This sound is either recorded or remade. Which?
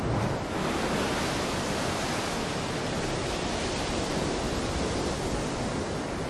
recorded